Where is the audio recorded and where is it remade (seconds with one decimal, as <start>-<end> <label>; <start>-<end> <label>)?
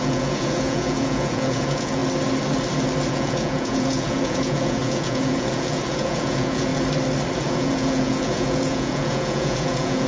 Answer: 0.0-2.0 remade; 2.0-3.1 recorded; 3.1-6.7 remade; 6.7-7.4 recorded; 7.4-10.1 remade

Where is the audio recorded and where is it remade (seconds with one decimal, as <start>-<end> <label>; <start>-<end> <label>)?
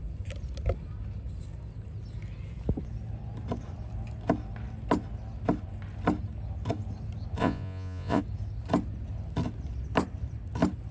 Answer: 0.0-7.4 recorded; 7.4-8.2 remade; 8.2-10.9 recorded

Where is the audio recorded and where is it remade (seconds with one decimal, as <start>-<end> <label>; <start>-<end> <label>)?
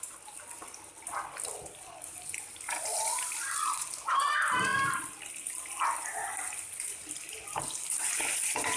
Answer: 0.0-8.8 recorded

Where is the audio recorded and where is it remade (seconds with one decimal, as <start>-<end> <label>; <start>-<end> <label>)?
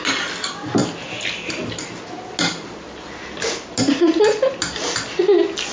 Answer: 0.0-5.7 recorded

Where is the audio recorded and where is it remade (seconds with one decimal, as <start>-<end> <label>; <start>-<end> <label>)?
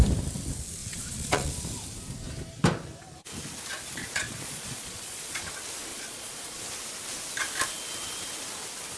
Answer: 0.0-0.8 recorded; 0.8-1.5 remade; 1.5-4.0 recorded; 4.0-5.5 remade; 5.5-5.9 recorded; 5.9-6.6 remade; 6.6-9.0 recorded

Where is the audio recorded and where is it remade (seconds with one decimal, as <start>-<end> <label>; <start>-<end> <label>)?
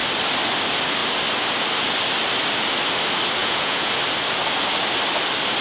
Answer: 0.0-3.4 recorded; 3.4-3.9 remade; 3.9-5.6 recorded